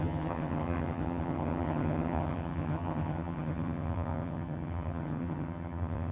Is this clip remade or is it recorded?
remade